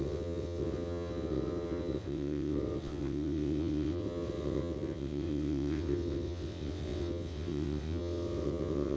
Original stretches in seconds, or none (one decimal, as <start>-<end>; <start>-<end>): none